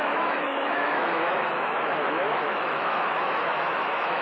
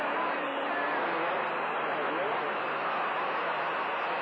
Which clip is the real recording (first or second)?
second